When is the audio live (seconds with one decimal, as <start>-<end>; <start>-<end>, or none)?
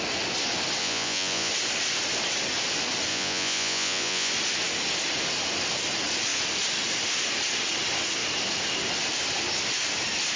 0.0-0.8; 1.5-3.1; 4.3-10.4